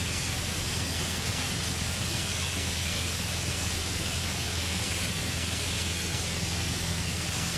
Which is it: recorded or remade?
remade